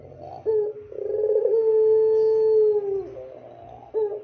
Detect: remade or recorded recorded